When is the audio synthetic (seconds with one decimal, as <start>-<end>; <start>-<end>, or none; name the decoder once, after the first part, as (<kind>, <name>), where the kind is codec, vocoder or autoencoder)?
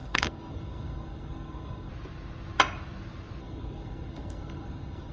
0.0-1.9 (codec, SNAC); 3.4-5.1